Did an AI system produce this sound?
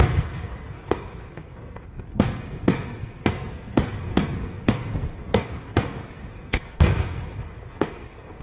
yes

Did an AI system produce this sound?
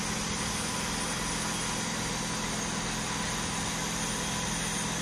no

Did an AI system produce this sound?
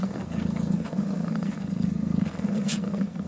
yes